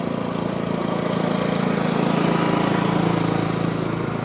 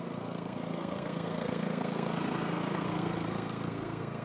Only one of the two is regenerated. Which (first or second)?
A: second